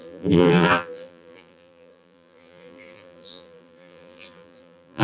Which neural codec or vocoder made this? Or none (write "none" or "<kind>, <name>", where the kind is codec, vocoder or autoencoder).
vocoder, BigVGAN v2